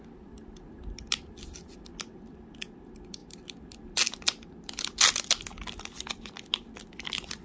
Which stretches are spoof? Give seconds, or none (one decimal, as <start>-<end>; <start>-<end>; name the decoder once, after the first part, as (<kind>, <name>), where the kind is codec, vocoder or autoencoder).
none